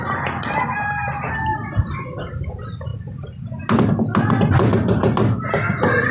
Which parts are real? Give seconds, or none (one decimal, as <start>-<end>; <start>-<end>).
0.0-6.1